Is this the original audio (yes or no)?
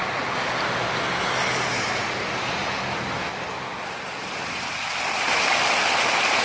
yes